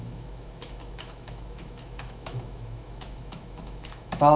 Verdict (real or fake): fake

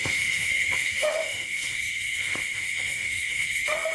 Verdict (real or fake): fake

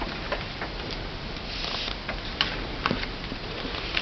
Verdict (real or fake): real